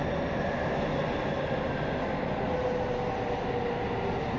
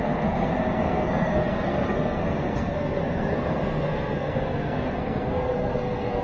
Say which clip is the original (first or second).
first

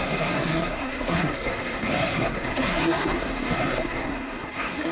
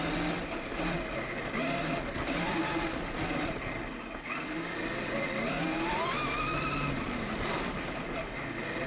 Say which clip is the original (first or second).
second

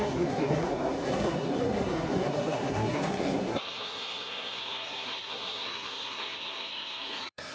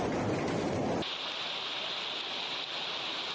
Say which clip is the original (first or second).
second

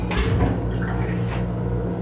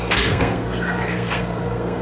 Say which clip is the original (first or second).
first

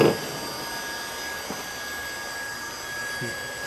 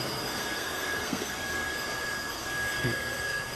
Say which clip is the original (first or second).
first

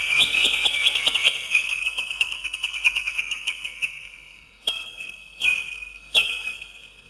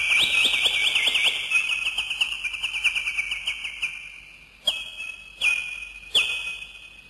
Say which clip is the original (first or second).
second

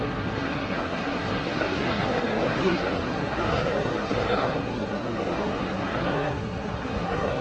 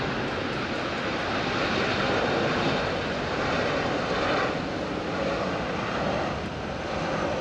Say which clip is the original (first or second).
second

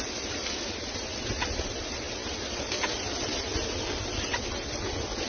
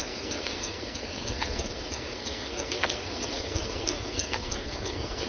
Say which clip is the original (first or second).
first